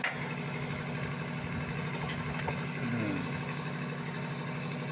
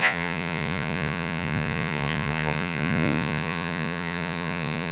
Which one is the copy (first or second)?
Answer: second